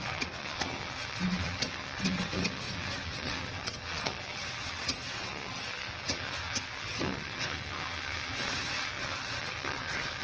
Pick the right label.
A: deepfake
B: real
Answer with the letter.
A